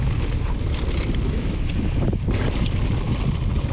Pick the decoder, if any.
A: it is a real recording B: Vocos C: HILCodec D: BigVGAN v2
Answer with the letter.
A